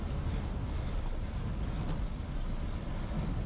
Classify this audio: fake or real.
real